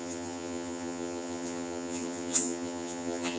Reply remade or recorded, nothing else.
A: remade